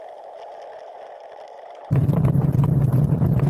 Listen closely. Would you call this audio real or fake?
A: real